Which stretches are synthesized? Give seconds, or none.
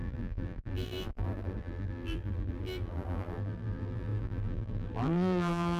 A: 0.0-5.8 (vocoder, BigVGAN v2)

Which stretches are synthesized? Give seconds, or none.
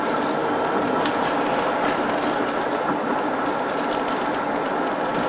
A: 0.0-0.4 (vocoder, BigVGAN v2); 3.6-5.3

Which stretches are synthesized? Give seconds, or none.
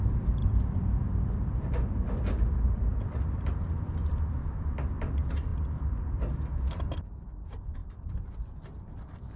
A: 0.0-9.4 (vocoder, BigVGAN v2)